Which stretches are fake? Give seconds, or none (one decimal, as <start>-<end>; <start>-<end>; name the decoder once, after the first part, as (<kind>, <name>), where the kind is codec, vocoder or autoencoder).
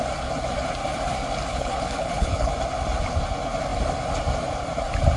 1.5-2.5 (codec, HILCodec)